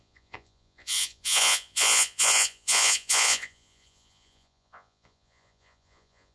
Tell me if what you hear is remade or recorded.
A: remade